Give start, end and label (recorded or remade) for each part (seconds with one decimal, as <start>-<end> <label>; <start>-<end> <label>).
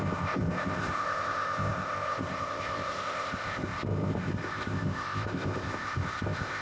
0.0-6.6 remade